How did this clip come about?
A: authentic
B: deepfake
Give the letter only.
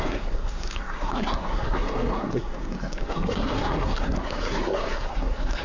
B